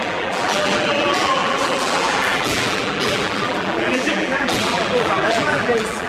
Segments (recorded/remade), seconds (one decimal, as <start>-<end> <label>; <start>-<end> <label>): 0.0-6.1 remade